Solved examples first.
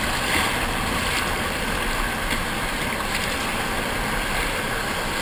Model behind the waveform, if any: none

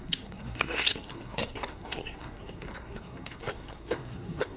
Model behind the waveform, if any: codec, SNAC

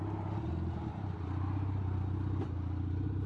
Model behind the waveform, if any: none